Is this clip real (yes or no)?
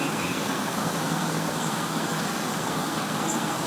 no